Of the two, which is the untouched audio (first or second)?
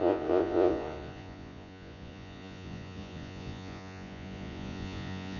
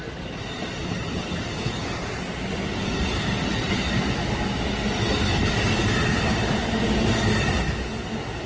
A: second